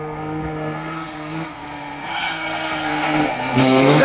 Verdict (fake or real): fake